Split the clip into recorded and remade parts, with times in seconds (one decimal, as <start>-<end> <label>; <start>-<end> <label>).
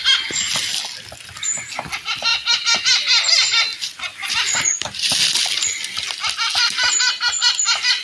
0.0-8.0 recorded